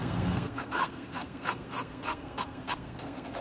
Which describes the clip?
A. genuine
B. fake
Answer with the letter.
B